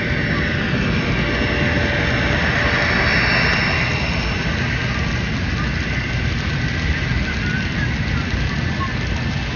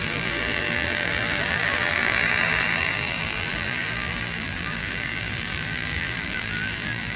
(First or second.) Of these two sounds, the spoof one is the second